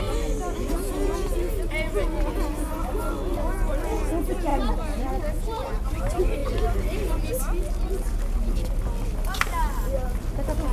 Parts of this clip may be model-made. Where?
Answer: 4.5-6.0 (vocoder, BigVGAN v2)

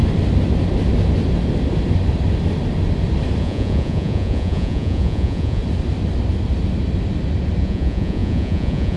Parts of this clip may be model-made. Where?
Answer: 3.4-5.6 (vocoder, Vocos); 7.6-9.0

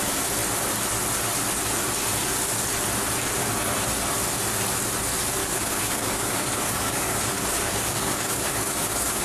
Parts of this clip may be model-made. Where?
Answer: 5.4-9.2 (codec, DAC)